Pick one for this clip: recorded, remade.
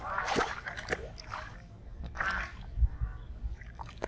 remade